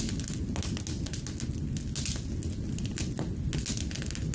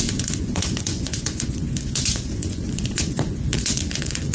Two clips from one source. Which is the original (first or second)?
first